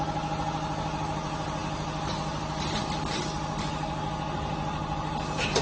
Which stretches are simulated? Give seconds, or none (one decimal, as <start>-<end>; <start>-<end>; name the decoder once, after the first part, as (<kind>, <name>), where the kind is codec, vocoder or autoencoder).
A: none